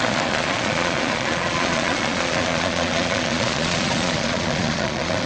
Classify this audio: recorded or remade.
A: remade